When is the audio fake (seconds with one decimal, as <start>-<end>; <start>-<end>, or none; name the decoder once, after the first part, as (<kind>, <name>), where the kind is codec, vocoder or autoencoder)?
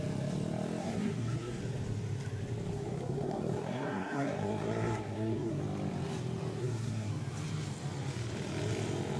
0.8-1.6 (codec, SNAC); 2.7-5.6; 6.6-7.1